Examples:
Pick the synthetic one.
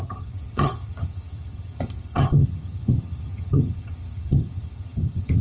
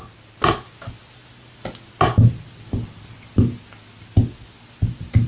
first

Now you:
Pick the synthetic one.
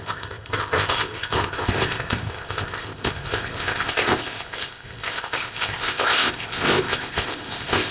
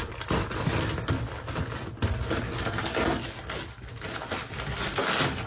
first